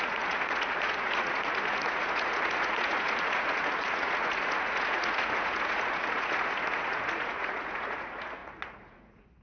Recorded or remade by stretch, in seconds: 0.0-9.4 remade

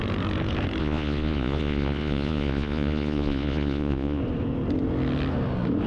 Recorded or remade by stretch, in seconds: 0.0-0.8 recorded; 0.8-4.2 remade; 4.2-5.9 recorded